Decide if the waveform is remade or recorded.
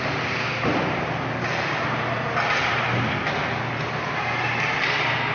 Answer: recorded